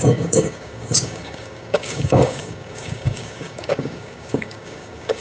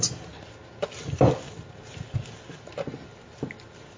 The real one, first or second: second